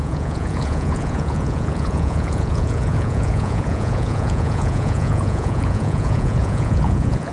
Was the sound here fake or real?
fake